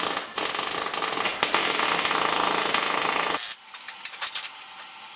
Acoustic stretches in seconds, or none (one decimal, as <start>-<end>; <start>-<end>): 0.0-5.2